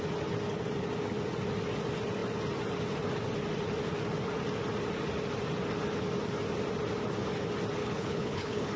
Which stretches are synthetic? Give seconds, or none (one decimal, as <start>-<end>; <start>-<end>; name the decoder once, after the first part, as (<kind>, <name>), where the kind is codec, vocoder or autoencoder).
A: 7.8-8.8 (codec, HILCodec)